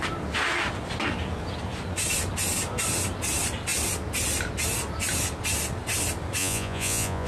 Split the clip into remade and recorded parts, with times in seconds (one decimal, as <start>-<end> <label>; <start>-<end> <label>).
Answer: 0.0-6.4 recorded; 6.4-7.3 remade